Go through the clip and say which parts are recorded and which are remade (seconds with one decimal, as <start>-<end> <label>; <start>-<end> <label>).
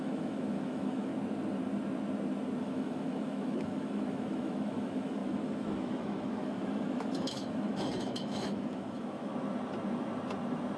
0.0-1.1 remade; 1.1-2.6 recorded; 2.6-9.3 remade; 9.3-10.8 recorded